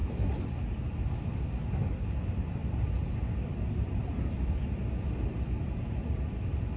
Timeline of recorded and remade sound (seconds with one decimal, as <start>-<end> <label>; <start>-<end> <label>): 0.0-0.6 remade; 0.6-2.6 recorded; 2.6-6.3 remade; 6.3-6.8 recorded